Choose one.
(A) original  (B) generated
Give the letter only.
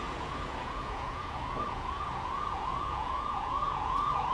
B